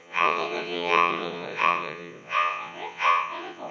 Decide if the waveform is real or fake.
fake